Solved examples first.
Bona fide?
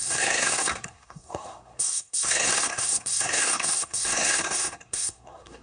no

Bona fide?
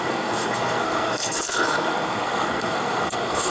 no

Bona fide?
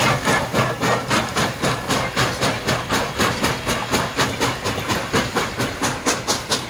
yes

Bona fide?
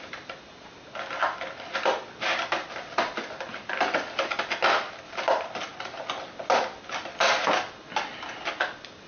yes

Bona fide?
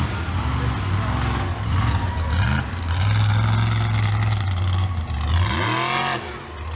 yes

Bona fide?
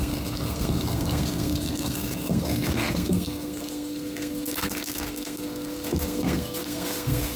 no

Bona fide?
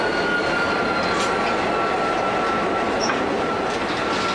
yes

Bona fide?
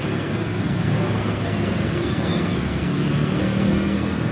no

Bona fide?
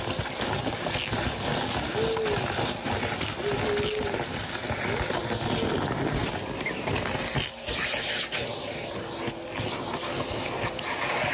yes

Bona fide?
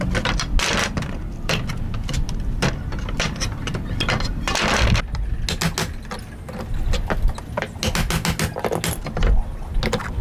yes